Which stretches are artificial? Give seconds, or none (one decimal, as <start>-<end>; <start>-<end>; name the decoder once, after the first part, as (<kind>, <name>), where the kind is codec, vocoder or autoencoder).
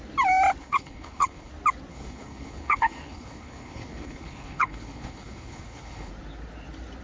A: 0.6-1.5 (codec, HILCodec); 1.9-6.1